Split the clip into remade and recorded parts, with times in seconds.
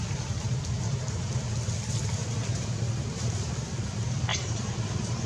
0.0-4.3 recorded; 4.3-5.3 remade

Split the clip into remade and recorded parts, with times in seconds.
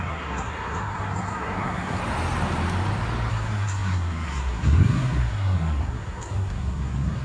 0.0-2.0 remade; 2.0-3.3 recorded; 3.3-7.2 remade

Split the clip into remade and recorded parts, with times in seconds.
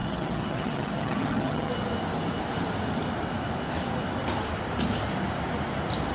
0.0-1.7 remade; 1.7-6.1 recorded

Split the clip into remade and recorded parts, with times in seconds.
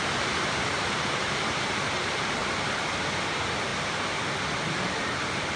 0.0-2.4 remade; 2.4-3.3 recorded; 3.3-3.7 remade; 3.7-4.9 recorded; 4.9-5.6 remade